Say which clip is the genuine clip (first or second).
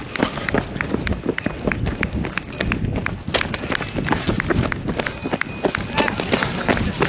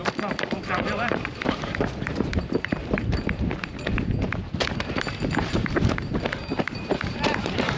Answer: first